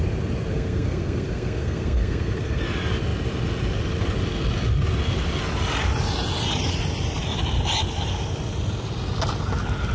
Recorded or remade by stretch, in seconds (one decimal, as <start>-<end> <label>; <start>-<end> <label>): 0.0-0.5 recorded; 0.5-2.6 remade; 2.6-9.9 recorded